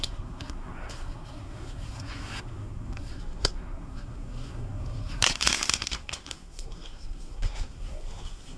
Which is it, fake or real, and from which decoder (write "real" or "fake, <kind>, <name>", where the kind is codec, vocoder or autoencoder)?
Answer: fake, codec, SNAC